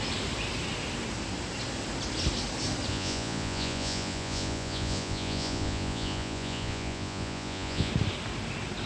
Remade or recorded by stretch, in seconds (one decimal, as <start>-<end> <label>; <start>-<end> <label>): 0.0-2.9 recorded; 2.9-7.9 remade; 7.9-8.9 recorded